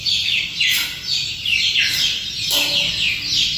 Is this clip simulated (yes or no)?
no